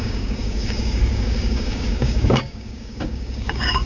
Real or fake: fake